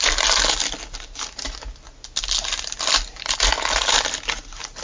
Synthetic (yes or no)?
no